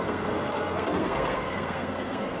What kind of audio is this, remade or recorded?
remade